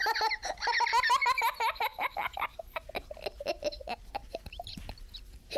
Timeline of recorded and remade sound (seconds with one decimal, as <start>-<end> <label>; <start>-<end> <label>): 0.0-5.6 recorded